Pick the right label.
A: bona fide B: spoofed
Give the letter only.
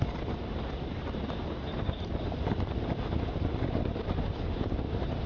B